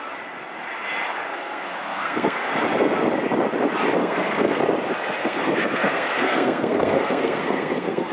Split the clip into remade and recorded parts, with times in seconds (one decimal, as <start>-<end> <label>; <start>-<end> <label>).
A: 0.0-1.3 recorded; 1.3-2.5 remade; 2.5-4.0 recorded; 4.0-4.6 remade; 4.6-5.2 recorded; 5.2-8.1 remade